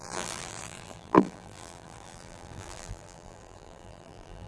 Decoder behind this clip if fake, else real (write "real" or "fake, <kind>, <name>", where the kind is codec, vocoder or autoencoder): fake, vocoder, BigVGAN v2